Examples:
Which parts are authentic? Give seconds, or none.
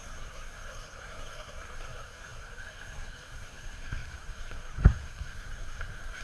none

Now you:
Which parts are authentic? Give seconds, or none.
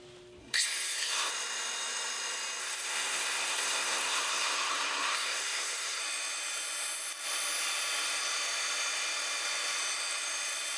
0.0-0.4; 1.3-2.6; 6.0-10.8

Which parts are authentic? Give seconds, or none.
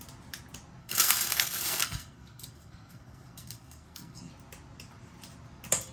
0.0-0.8; 4.3-5.9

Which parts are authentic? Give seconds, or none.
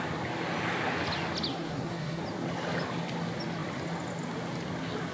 0.0-1.5; 2.2-5.1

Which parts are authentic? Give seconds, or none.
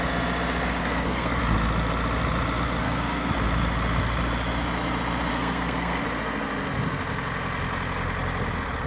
0.0-0.8; 1.4-2.8; 3.3-5.3; 6.0-8.9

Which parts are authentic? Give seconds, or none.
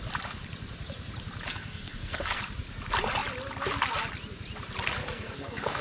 0.0-1.5; 2.4-5.0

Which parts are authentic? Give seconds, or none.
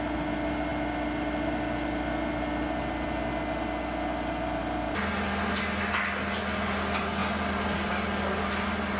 0.0-9.0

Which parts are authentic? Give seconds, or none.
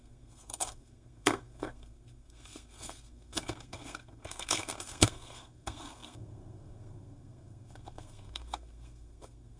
none